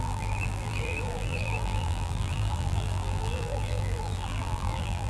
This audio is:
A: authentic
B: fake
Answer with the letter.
B